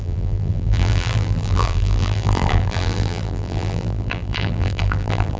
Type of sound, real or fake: fake